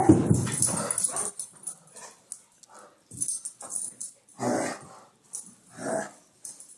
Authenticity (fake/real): real